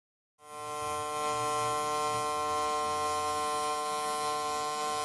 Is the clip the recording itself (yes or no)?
yes